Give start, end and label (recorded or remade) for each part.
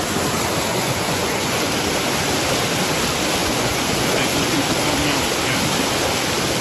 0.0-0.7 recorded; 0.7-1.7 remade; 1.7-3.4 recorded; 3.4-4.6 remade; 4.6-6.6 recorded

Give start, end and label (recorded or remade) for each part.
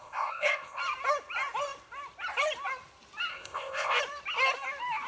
0.0-0.8 remade; 0.8-3.3 recorded; 3.3-4.0 remade; 4.0-5.1 recorded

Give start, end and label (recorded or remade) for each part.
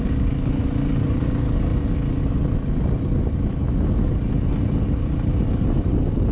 0.0-6.3 recorded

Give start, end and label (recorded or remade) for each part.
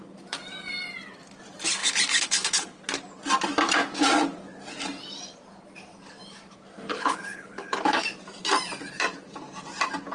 0.0-1.8 recorded; 1.8-2.8 remade; 2.8-6.9 recorded; 6.9-7.8 remade; 7.8-10.1 recorded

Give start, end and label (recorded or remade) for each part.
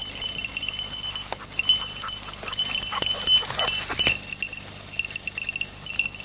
0.0-6.2 recorded